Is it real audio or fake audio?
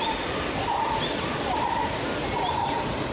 real